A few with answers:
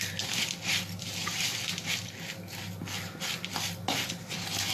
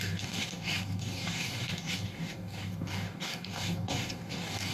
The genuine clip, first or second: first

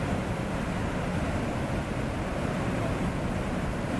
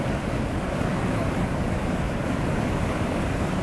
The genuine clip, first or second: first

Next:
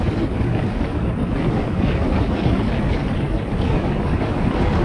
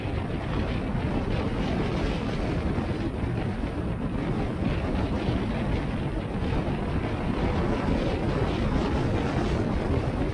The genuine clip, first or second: second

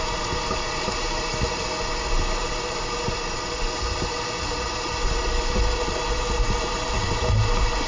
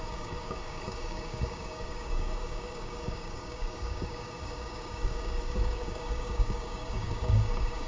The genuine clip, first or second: first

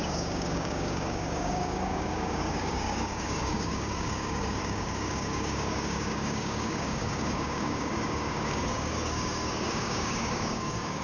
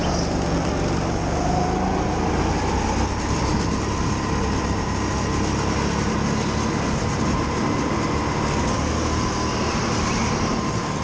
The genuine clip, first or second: second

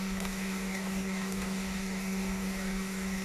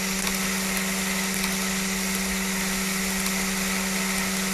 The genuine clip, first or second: second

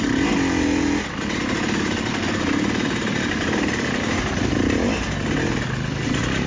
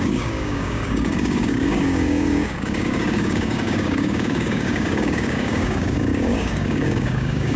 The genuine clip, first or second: first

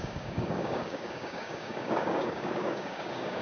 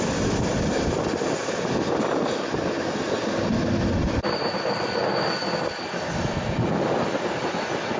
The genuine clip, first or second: second